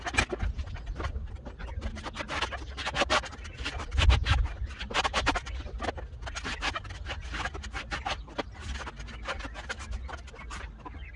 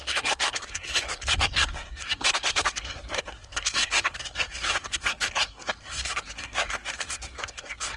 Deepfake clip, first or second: second